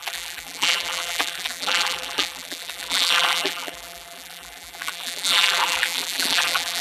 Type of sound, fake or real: fake